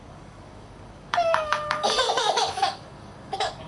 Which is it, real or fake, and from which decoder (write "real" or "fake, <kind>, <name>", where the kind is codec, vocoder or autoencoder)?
fake, codec, DAC